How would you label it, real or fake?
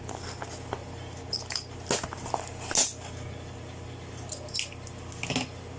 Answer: real